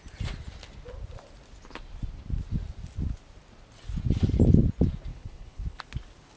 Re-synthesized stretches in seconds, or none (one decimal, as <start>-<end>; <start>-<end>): 5.1-5.8